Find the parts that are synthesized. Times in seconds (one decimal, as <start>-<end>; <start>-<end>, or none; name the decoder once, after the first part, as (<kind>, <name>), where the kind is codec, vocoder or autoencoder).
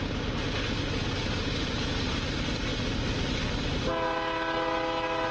none